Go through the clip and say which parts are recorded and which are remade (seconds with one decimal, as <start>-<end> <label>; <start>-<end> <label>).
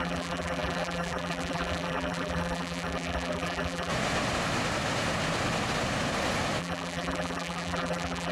0.0-3.9 remade; 3.9-6.6 recorded; 6.6-8.3 remade